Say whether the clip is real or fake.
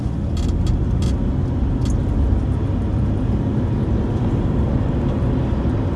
real